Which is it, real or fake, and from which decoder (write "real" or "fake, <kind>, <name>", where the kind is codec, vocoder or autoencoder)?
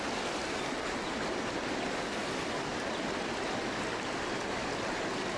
real